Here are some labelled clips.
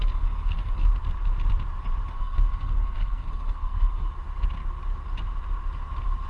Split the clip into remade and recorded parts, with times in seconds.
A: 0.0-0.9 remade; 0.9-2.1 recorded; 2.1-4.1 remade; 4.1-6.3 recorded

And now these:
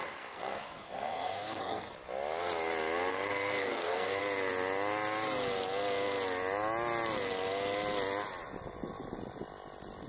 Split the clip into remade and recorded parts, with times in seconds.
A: 0.0-1.9 remade; 1.9-3.1 recorded; 3.1-4.2 remade; 4.2-10.1 recorded

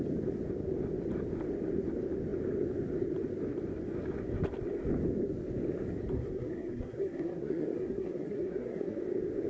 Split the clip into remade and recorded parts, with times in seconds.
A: 0.0-6.1 recorded; 6.1-9.0 remade; 9.0-9.5 recorded